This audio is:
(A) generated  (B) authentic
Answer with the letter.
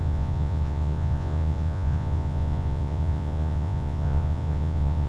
A